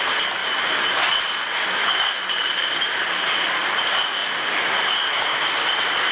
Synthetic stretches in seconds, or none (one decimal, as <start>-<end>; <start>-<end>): none